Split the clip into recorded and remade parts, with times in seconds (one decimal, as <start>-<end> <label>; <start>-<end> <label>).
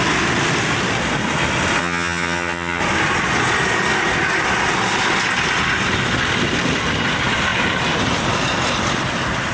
0.0-1.8 recorded; 1.8-2.8 remade; 2.8-9.5 recorded